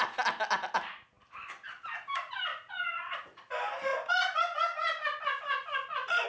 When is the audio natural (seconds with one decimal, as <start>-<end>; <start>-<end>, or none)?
0.0-2.5; 3.5-6.3